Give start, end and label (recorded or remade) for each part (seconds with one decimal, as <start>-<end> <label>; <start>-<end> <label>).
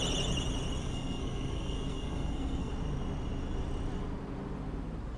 0.0-0.8 recorded; 0.8-2.7 remade; 2.7-5.2 recorded